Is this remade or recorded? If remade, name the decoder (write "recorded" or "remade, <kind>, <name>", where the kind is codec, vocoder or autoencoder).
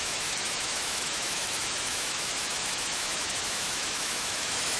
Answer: remade, autoencoder, DAC-VAE